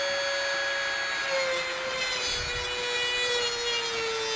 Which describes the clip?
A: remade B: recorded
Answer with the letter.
B